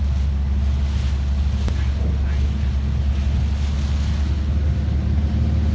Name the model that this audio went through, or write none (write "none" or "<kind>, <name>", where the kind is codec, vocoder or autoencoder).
none